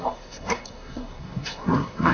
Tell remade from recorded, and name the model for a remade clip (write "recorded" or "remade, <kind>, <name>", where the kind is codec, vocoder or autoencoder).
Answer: remade, codec, SNAC